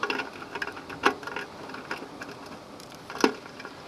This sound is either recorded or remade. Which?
recorded